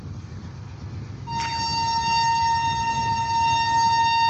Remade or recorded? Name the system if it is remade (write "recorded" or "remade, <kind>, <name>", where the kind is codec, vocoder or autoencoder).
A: recorded